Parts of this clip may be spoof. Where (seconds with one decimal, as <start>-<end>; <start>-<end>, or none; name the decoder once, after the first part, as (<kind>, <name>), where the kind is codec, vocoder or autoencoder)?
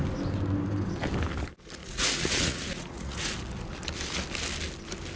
1.8-3.3 (vocoder, Vocos)